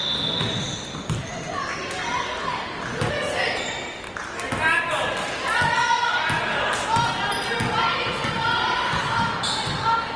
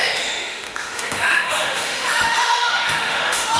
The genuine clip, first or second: first